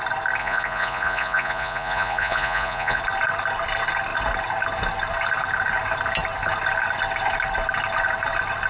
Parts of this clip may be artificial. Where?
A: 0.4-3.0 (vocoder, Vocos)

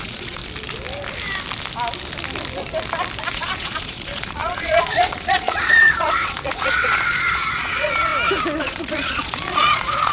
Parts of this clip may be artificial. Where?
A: 0.0-0.4 (vocoder, Vocos); 3.3-8.1; 8.6-10.1

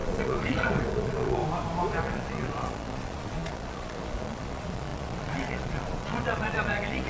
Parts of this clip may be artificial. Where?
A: 0.0-1.4 (vocoder, Vocos); 2.0-7.1

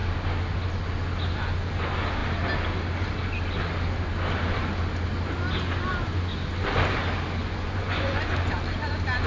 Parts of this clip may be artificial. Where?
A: 7.4-8.2 (vocoder, Vocos)

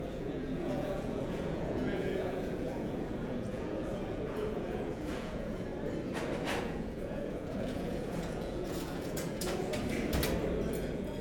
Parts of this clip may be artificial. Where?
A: 0.0-5.7 (vocoder, Vocos); 6.6-9.7; 10.7-11.2

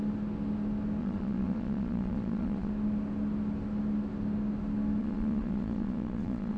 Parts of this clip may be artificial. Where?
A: 1.0-2.7 (vocoder, Vocos); 5.0-6.6

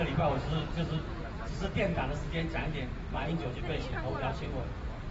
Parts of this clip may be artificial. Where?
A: 0.0-1.9 (vocoder, Vocos); 4.4-5.1